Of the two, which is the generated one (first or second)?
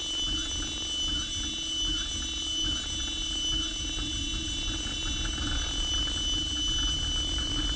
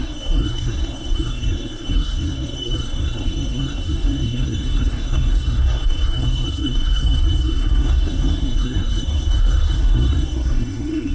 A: second